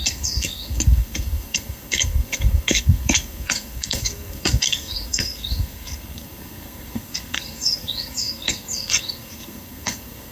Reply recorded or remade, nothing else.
remade